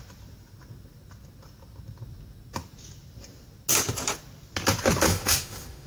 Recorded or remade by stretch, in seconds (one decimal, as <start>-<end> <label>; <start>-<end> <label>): 0.0-5.1 recorded; 5.1-5.9 remade